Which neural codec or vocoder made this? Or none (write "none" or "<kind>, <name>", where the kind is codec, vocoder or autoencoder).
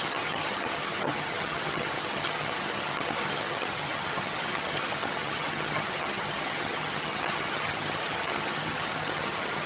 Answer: vocoder, HiFi-GAN